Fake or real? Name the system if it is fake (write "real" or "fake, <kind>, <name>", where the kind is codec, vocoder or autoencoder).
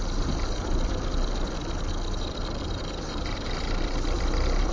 fake, vocoder, BigVGAN v2